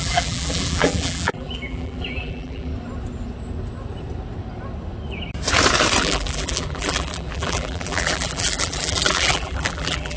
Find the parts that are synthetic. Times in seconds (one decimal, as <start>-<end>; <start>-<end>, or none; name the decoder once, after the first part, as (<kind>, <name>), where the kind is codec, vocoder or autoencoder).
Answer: 0.0-2.7 (vocoder, BigVGAN v2); 6.0-10.2